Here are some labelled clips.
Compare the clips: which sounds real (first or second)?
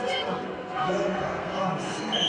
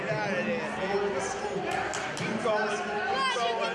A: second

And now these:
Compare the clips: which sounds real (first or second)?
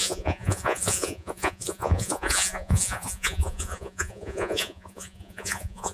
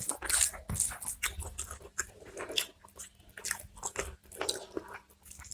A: second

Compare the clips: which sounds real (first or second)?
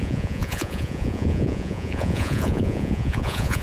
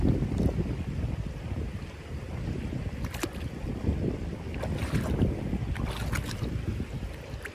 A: second